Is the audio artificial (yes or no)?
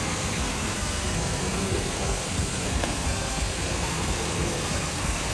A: yes